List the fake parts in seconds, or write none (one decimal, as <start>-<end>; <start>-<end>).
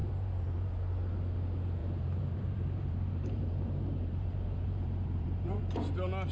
0.0-0.7; 1.8-5.6